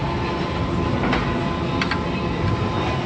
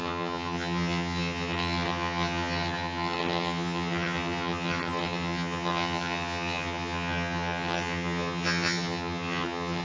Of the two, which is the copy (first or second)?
second